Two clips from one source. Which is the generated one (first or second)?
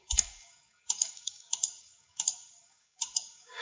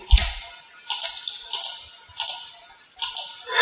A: first